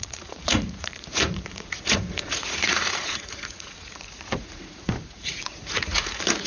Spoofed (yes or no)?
yes